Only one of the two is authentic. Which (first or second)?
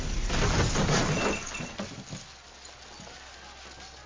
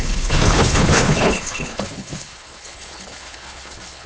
first